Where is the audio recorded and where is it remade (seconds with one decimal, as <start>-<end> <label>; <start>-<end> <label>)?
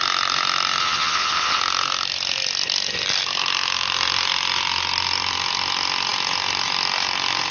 0.0-0.8 recorded; 0.8-1.6 remade; 1.6-7.5 recorded